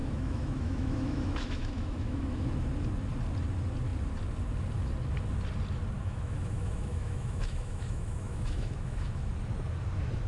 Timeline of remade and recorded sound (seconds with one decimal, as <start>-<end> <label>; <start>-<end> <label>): 0.0-2.5 remade; 2.5-6.0 recorded; 6.0-9.3 remade; 9.3-10.3 recorded